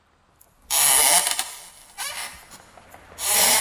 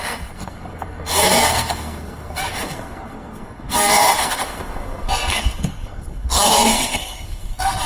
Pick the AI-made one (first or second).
second